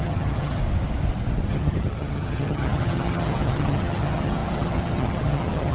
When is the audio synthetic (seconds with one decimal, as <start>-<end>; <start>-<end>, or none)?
0.0-0.6; 1.5-5.7